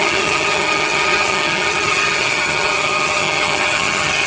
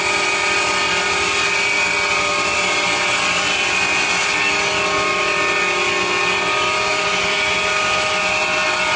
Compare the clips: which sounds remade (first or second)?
first